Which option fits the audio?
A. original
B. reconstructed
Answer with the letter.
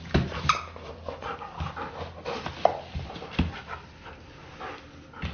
A